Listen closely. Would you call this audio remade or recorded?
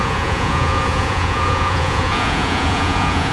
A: remade